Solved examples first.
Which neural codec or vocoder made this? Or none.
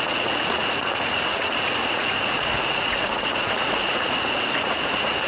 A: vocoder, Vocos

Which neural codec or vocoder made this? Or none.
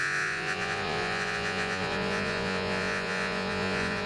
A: vocoder, Vocos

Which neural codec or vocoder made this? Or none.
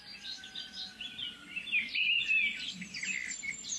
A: none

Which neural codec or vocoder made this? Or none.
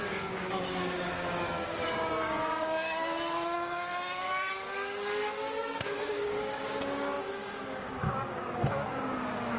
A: codec, DAC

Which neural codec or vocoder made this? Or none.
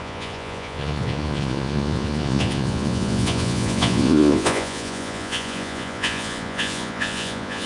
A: vocoder, Vocos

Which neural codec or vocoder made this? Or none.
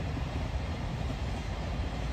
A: none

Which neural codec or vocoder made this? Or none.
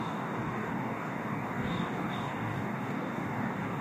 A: codec, DAC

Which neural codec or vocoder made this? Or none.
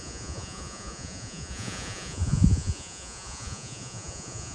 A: vocoder, Vocos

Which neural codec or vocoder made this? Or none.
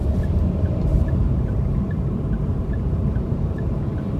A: vocoder, BigVGAN v2